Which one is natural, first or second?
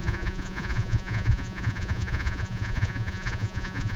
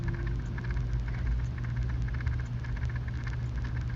second